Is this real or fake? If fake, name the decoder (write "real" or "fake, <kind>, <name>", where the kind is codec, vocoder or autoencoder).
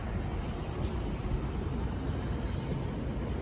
real